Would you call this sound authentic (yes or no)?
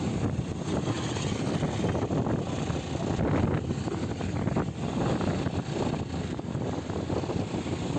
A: yes